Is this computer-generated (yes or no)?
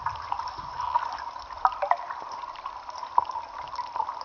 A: no